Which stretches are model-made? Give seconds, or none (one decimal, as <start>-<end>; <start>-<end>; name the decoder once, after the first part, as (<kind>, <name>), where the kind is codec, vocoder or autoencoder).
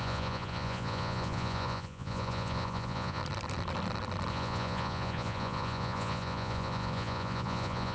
0.0-3.2 (vocoder, Vocos); 4.3-7.9